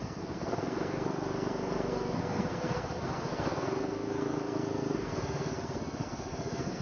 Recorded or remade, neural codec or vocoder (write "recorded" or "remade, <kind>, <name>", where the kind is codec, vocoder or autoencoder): remade, codec, SNAC